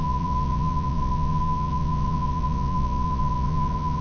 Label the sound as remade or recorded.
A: remade